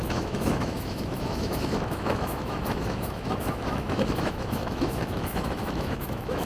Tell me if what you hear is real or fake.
fake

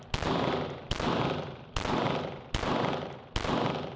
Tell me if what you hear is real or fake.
real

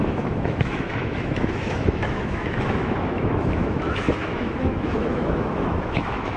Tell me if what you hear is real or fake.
fake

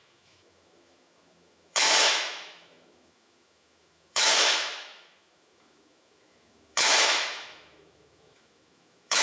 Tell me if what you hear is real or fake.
fake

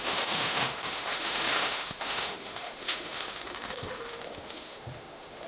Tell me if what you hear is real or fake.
fake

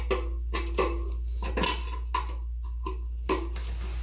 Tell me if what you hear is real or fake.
real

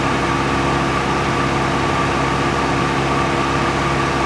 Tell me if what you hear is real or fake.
real